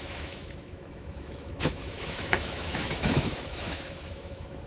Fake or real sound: fake